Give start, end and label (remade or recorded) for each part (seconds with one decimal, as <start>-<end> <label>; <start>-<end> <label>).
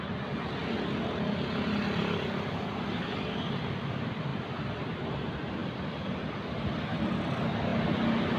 0.0-4.3 recorded; 4.3-5.1 remade; 5.1-8.4 recorded